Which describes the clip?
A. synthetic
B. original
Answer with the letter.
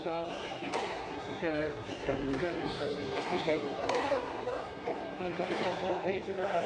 A